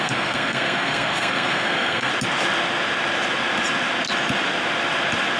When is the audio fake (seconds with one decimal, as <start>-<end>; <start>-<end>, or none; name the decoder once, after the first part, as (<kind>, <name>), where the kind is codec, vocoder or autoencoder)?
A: 0.0-2.1 (codec, SNAC)